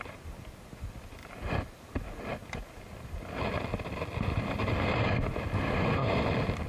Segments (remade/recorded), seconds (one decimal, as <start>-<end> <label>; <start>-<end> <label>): 0.0-6.7 recorded